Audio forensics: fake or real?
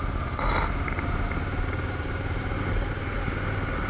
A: real